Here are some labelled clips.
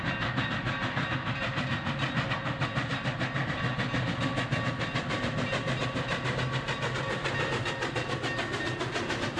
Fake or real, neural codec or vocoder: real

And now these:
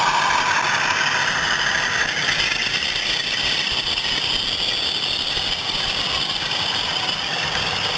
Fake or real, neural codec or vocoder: real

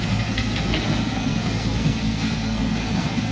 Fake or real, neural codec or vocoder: fake, codec, SNAC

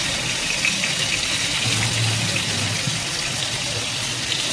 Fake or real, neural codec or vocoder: real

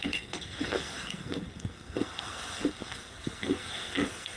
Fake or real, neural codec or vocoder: fake, codec, SNAC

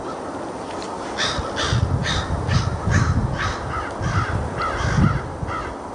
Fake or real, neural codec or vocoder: real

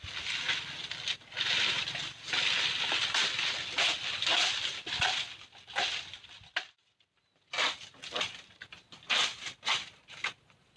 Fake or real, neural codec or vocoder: real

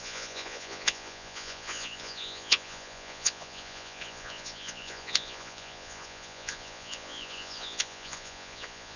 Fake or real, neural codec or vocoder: fake, vocoder, Vocos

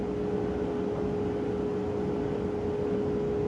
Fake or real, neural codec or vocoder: real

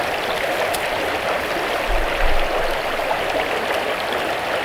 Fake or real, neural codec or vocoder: real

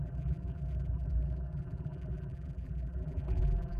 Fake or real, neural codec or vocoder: fake, vocoder, BigVGAN v2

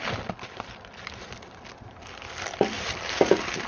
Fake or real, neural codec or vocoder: real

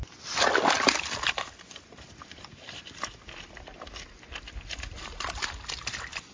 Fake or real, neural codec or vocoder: real